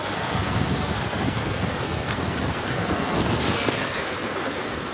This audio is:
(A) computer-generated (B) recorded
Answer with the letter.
A